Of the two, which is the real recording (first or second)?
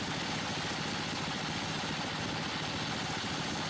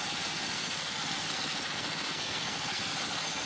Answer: first